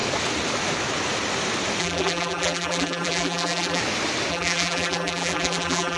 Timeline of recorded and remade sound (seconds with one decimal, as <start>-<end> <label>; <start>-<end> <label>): 0.0-1.8 recorded; 1.8-3.8 remade; 3.8-4.3 recorded; 4.3-6.0 remade